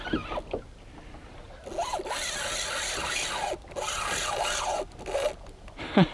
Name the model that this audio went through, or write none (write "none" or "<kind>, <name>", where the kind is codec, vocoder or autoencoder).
none